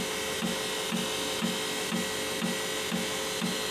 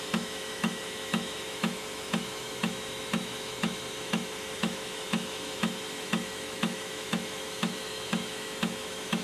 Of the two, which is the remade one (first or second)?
second